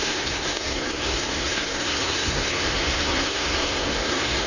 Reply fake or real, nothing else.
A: fake